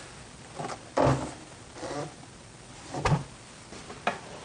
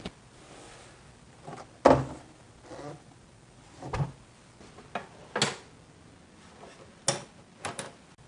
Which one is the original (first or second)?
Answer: second